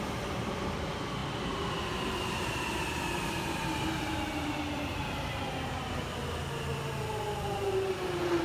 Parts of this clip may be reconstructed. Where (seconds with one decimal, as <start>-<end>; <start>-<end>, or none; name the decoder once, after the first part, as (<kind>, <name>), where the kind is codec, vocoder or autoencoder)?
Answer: none